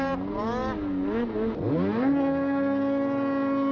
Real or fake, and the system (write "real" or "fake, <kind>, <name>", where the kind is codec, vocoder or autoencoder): real